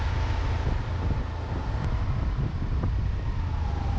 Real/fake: real